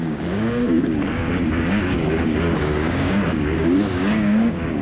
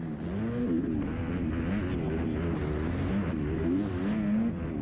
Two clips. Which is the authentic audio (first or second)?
second